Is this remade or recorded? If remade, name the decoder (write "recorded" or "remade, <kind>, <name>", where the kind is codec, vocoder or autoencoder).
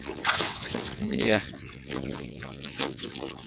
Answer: remade, vocoder, WaveNeXt